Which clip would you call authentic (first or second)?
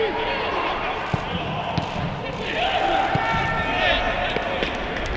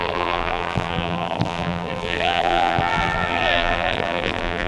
first